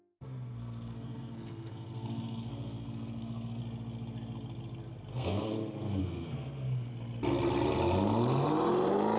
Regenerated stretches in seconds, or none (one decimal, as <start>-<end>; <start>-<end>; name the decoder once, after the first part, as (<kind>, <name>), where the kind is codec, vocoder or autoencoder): 0.0-3.6 (codec, SNAC); 5.1-5.5; 6.0-6.9